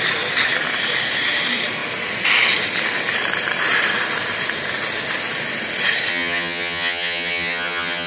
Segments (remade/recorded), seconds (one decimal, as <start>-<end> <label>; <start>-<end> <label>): 0.0-6.1 recorded; 6.1-8.1 remade